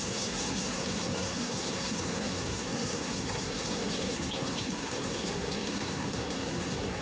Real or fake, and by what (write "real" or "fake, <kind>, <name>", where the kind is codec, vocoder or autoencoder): fake, codec, SNAC